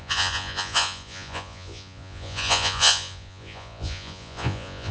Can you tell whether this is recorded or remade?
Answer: remade